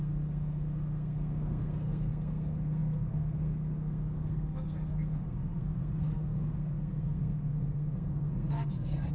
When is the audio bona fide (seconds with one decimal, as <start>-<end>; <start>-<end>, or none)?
none

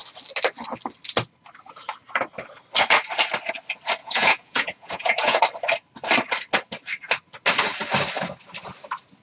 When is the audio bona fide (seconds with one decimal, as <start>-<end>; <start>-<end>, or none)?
0.0-4.0; 5.4-9.2

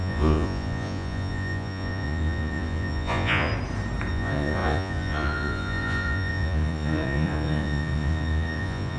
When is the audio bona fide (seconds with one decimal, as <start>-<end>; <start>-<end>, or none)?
3.5-4.1

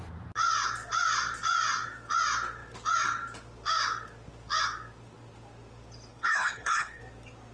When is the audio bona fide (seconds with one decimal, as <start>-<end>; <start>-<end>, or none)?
0.0-6.1; 7.0-7.5

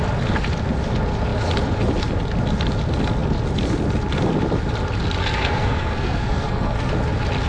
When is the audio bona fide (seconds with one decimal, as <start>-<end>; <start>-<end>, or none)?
0.0-5.2; 6.9-7.5

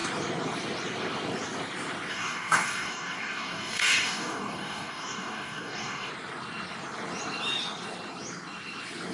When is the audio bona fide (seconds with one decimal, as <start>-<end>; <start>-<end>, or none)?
0.0-2.1; 6.1-9.1

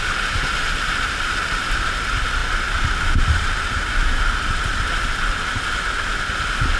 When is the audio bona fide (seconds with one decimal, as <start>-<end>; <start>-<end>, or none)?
0.0-6.8